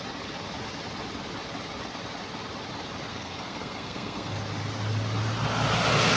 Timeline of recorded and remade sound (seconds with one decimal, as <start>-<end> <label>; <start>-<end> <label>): 0.0-3.1 recorded; 3.1-4.4 remade; 4.4-6.2 recorded